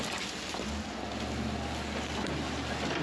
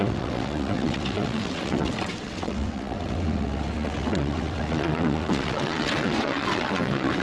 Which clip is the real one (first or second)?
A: first